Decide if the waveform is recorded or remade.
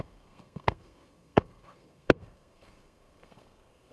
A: remade